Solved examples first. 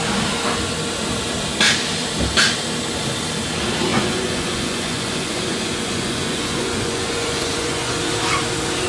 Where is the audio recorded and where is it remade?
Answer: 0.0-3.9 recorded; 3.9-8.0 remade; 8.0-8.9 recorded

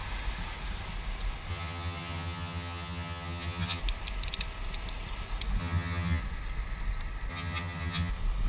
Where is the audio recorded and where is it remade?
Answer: 0.0-1.5 recorded; 1.5-3.8 remade; 3.8-5.6 recorded; 5.6-6.2 remade; 6.2-7.3 recorded; 7.3-8.1 remade; 8.1-8.5 recorded

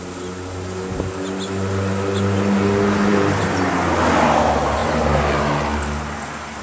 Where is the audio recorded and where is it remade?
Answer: 0.0-3.1 recorded; 3.1-3.7 remade; 3.7-6.6 recorded

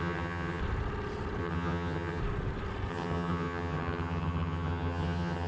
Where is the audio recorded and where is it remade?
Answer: 0.0-0.6 remade; 0.6-1.4 recorded; 1.4-2.2 remade; 2.2-2.9 recorded; 2.9-5.5 remade

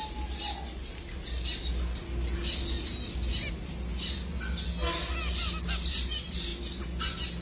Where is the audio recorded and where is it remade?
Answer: 0.0-7.4 recorded